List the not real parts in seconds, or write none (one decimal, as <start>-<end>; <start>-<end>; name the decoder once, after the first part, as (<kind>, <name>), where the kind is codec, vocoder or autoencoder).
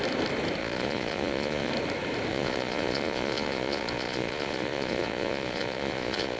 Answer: 0.6-1.7 (vocoder, Vocos); 2.3-6.4